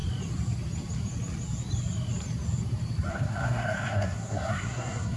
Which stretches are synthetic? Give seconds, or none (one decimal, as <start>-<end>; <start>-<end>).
3.1-5.2